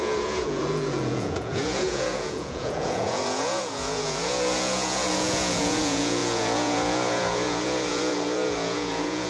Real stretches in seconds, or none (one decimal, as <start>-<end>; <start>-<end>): none